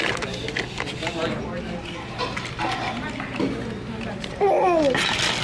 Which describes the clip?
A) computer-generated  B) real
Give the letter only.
B